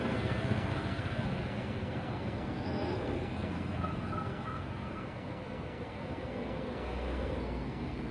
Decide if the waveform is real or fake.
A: fake